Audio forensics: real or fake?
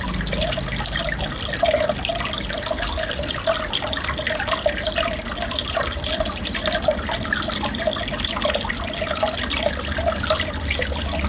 real